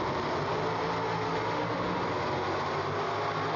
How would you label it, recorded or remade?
recorded